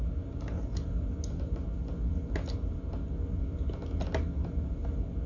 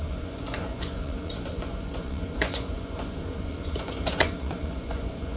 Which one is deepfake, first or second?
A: second